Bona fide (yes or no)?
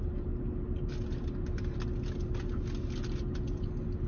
yes